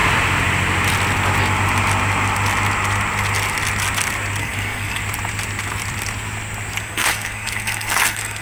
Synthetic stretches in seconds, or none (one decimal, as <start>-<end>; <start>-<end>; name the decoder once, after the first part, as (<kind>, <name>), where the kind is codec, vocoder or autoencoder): 4.4-5.0 (codec, SNAC); 6.8-8.4